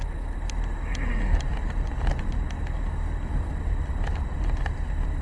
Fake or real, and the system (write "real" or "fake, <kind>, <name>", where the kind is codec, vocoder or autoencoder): real